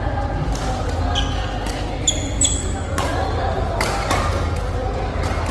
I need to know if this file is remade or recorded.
recorded